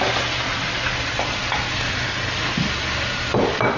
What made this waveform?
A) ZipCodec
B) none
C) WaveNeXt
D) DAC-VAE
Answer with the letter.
B